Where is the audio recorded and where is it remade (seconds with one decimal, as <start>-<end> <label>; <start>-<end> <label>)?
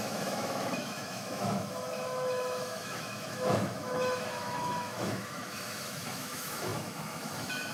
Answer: 0.0-7.7 remade